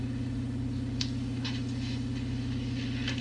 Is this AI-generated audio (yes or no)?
no